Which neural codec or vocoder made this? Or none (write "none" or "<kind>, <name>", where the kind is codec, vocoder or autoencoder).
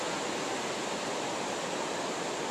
none